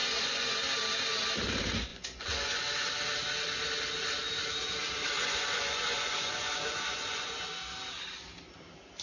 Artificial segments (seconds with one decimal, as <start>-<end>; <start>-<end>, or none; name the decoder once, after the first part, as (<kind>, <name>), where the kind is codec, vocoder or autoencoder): 0.0-0.5 (vocoder, Vocos); 1.9-2.6; 5.2-7.5